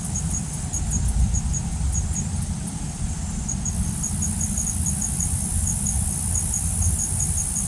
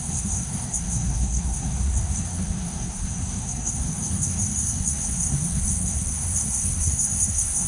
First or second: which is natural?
first